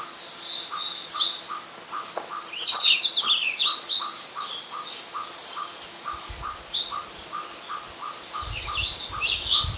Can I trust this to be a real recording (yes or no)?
yes